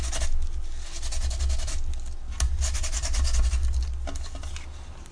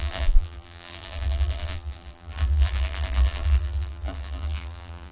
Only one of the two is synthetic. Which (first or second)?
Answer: second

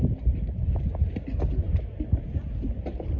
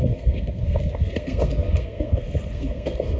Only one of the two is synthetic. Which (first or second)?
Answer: second